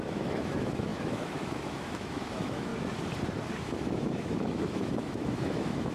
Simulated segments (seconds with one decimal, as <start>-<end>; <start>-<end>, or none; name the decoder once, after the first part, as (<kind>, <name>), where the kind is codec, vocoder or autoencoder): 0.0-2.7 (autoencoder, DAC-VAE); 3.6-5.9